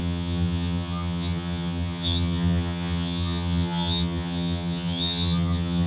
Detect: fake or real fake